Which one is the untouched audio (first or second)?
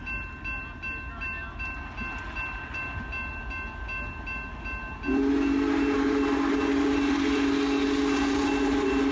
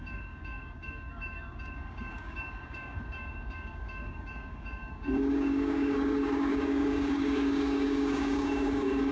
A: first